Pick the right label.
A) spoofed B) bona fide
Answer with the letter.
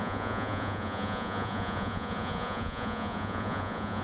A